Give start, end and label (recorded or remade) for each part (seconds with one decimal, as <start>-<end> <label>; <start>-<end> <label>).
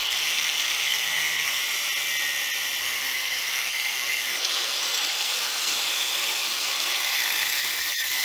0.0-1.6 remade; 1.6-2.8 recorded; 2.8-8.2 remade